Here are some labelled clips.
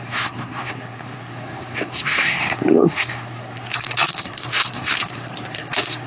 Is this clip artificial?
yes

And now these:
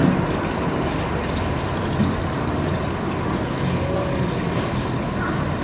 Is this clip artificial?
no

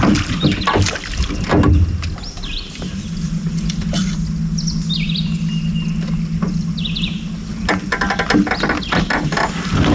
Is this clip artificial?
no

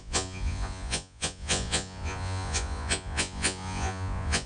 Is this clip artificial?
yes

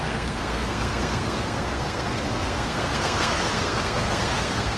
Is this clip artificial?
yes